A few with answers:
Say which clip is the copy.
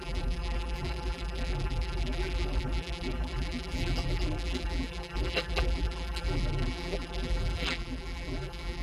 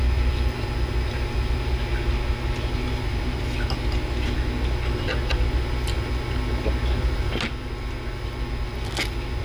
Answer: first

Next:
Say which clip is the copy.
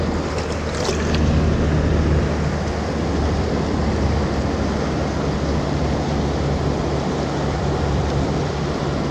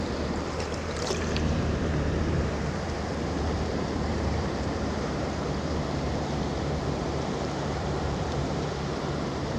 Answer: second